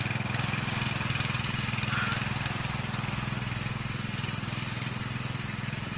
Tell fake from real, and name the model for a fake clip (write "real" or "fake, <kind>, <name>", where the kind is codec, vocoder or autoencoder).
real